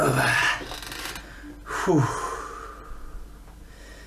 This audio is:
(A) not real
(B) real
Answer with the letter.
B